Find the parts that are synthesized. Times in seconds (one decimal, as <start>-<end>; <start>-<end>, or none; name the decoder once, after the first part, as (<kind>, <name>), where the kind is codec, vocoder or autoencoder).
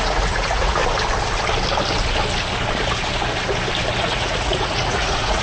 0.0-0.8 (vocoder, Vocos); 4.0-5.4